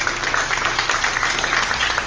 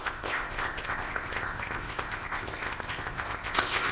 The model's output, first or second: second